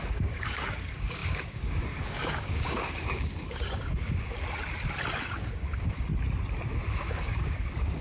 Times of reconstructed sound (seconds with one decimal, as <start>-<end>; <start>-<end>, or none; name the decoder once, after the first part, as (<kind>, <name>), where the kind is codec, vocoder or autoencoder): 0.0-4.4 (codec, DAC); 5.3-6.1; 6.9-8.0